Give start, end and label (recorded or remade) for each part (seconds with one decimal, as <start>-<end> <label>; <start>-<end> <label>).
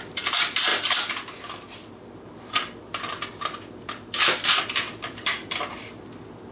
0.0-6.5 recorded